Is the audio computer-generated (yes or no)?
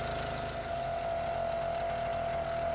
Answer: no